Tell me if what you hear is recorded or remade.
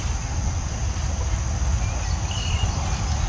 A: recorded